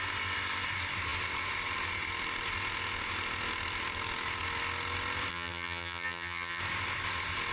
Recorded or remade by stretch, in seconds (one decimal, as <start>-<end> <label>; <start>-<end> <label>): 0.0-5.3 recorded; 5.3-6.6 remade; 6.6-7.5 recorded